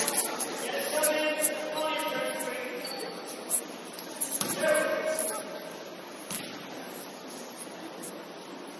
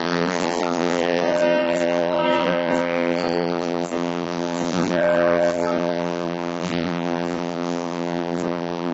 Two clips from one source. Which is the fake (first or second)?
second